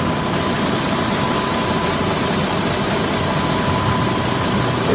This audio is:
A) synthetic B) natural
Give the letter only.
A